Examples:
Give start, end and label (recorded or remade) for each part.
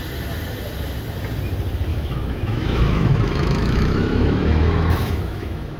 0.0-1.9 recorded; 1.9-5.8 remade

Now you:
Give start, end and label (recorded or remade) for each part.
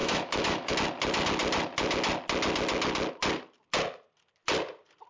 0.0-0.7 remade; 0.7-5.1 recorded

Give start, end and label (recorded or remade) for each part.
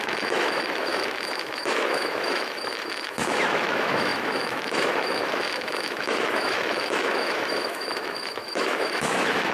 0.0-9.5 remade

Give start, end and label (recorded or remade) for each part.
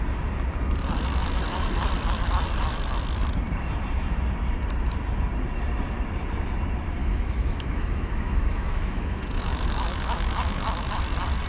0.0-7.0 recorded; 7.0-10.9 remade; 10.9-11.5 recorded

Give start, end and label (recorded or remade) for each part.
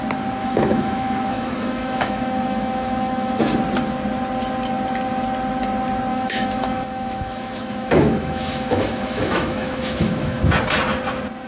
0.0-0.4 recorded; 0.4-3.4 remade; 3.4-6.1 recorded; 6.1-10.4 remade; 10.4-11.5 recorded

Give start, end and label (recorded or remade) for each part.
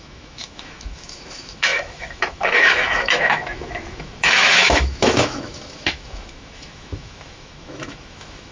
0.0-8.5 remade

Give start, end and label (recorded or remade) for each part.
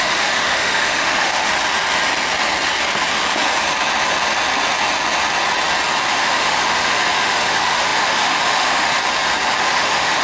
0.0-1.5 remade; 1.5-6.1 recorded; 6.1-9.0 remade; 9.0-9.6 recorded; 9.6-10.2 remade